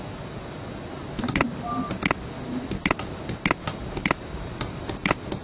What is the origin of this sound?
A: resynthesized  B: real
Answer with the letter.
B